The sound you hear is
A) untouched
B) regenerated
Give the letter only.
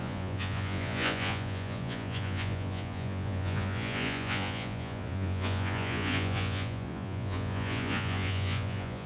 B